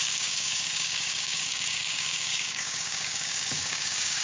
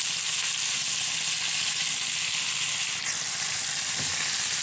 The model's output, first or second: first